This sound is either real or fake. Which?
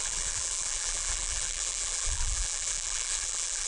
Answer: fake